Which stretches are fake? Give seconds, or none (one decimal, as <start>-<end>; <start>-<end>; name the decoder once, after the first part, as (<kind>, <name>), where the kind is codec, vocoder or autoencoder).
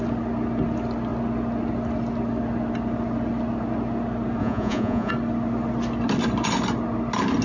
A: 4.4-5.1 (vocoder, Vocos)